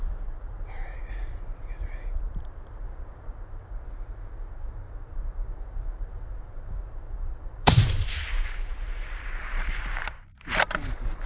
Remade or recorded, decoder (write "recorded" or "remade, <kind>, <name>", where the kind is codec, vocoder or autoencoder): remade, vocoder, BigVGAN v2